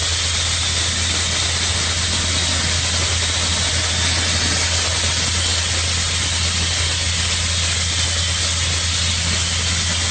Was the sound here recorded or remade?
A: recorded